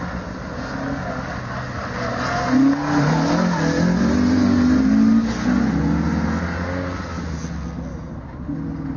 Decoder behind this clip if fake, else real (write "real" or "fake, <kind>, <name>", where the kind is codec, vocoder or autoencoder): real